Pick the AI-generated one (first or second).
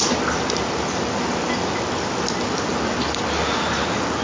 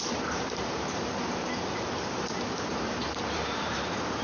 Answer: second